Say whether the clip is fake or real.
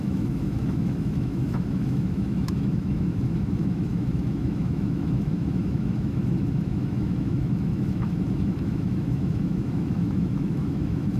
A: fake